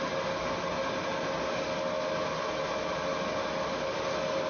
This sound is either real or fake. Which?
real